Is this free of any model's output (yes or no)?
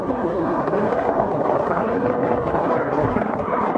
no